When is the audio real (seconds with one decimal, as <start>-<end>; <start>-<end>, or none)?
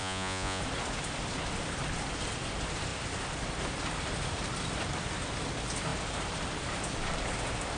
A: 0.6-7.8